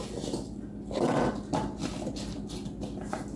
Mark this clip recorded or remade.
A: recorded